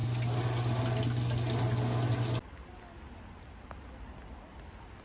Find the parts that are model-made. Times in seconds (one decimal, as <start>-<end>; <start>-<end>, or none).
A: none